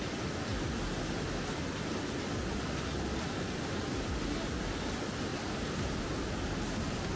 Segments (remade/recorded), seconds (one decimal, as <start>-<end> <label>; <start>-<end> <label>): 0.0-7.2 recorded